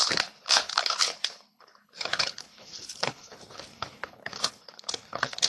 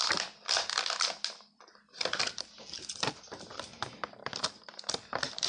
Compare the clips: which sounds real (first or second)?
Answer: second